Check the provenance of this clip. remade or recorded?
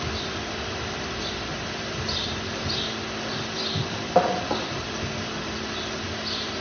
recorded